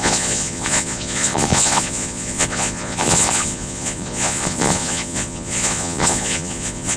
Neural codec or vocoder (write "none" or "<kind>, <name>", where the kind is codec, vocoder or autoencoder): vocoder, Vocos